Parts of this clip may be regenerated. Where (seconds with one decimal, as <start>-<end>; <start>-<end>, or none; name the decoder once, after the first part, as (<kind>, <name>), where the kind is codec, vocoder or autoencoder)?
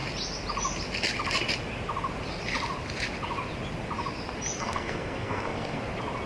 4.6-5.8 (codec, SNAC)